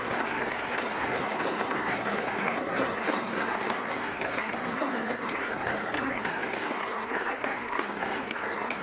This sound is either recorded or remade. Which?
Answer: remade